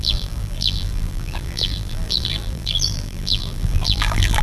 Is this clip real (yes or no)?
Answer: no